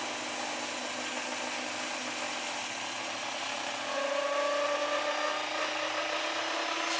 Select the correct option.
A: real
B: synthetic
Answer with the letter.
A